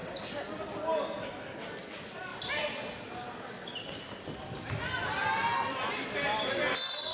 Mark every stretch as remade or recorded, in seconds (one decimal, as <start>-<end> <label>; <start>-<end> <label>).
0.0-7.1 recorded